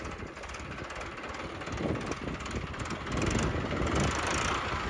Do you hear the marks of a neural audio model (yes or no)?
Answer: yes